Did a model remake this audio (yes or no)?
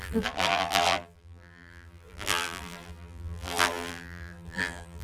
yes